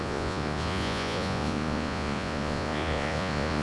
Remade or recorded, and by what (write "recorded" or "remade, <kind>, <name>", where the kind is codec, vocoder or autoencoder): remade, vocoder, Vocos